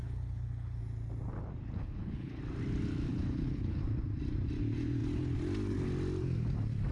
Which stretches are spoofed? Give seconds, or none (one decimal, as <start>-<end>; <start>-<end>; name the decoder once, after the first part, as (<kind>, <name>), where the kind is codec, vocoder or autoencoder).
0.0-0.8 (codec, HILCodec); 1.8-2.4; 3.1-3.8